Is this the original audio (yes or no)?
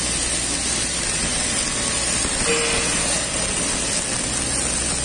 yes